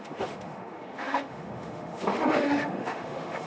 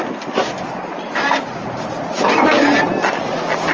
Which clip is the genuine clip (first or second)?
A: second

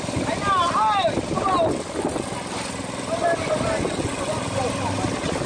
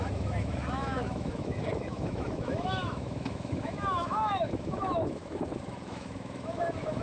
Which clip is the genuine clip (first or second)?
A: first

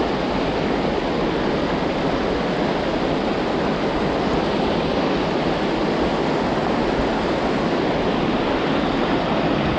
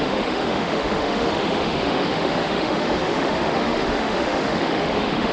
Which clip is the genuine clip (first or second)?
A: first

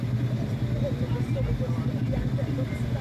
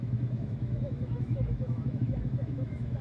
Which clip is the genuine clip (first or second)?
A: first